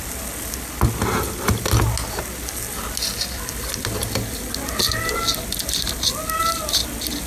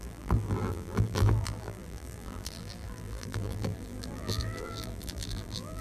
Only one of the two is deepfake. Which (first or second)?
second